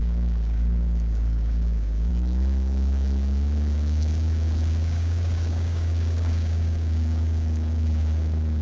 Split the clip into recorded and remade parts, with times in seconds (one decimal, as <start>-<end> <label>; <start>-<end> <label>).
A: 0.0-8.6 remade